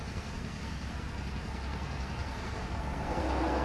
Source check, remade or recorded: remade